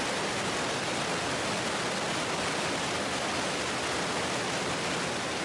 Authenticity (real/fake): real